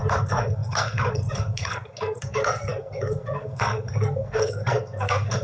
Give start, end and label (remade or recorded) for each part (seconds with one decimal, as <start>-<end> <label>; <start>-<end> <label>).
0.0-5.4 remade